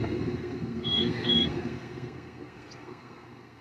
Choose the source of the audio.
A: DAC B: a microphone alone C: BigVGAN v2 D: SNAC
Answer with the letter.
D